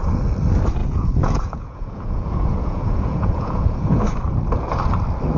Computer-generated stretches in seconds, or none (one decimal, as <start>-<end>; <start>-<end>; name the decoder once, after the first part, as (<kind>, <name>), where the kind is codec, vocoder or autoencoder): 0.8-4.0 (vocoder, Vocos)